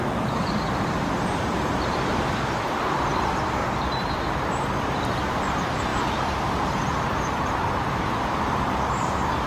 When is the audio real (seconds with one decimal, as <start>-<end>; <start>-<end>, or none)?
3.6-4.8; 5.9-6.4